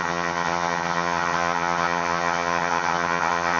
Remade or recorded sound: remade